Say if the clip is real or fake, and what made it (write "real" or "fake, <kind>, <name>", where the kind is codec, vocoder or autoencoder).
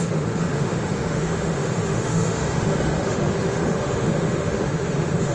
fake, autoencoder, DAC-VAE